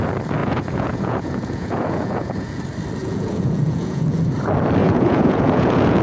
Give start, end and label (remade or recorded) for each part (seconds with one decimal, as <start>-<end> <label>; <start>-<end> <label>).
0.0-0.4 recorded; 0.4-2.6 remade; 2.6-3.0 recorded; 3.0-4.2 remade; 4.2-4.8 recorded; 4.8-6.0 remade